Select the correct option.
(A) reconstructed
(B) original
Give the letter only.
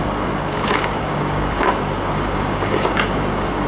A